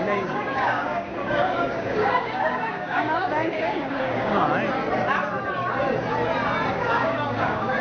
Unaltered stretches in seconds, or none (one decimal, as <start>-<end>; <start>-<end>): 4.4-6.7